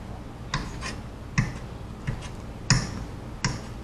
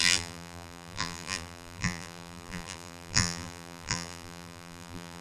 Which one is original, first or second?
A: first